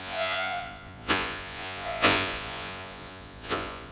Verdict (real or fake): fake